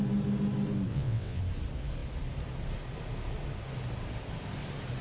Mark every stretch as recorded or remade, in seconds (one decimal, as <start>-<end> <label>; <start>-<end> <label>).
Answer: 0.0-0.9 recorded; 0.9-1.4 remade; 1.4-5.0 recorded